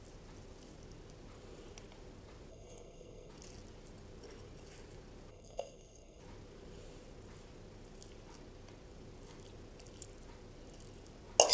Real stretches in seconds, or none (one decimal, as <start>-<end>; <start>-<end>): 0.0-2.5; 3.3-5.3; 6.2-11.5